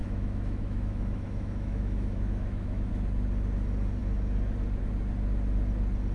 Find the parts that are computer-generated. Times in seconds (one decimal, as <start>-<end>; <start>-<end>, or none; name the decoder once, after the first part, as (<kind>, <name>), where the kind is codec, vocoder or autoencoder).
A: 0.0-2.9 (autoencoder, DAC-VAE)